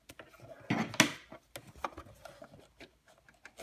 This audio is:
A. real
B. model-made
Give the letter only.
A